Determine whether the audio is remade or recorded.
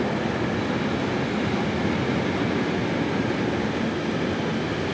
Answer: recorded